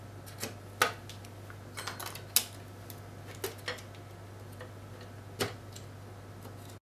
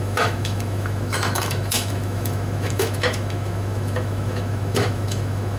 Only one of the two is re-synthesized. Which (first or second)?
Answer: second